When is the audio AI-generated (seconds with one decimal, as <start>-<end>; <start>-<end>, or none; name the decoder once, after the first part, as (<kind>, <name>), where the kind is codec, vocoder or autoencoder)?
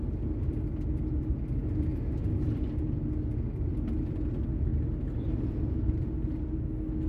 none